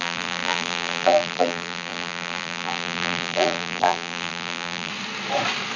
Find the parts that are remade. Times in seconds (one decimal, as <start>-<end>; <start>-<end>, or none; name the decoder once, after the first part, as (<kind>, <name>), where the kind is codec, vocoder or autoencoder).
0.0-4.9 (vocoder, BigVGAN v2)